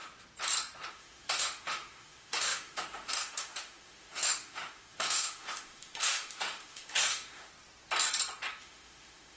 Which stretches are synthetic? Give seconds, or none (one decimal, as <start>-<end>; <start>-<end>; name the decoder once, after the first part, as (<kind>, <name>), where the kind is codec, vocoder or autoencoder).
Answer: 0.9-7.5 (autoencoder, DAC-VAE); 8.6-9.4